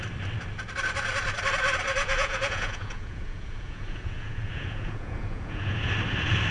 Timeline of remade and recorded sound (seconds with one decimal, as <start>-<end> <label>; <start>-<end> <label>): 0.0-2.0 recorded; 2.0-5.9 remade; 5.9-6.5 recorded